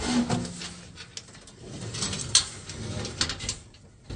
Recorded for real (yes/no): yes